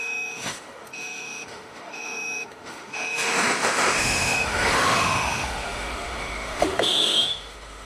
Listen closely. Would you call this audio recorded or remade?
remade